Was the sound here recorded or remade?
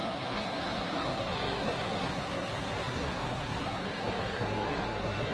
remade